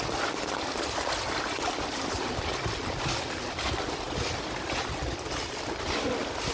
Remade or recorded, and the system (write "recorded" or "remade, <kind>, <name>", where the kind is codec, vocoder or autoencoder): recorded